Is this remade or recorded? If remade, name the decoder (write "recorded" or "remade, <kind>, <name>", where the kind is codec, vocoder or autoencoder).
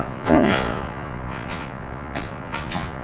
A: remade, vocoder, Vocos